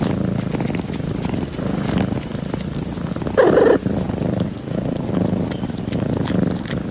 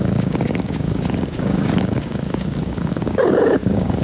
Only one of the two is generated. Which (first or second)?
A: second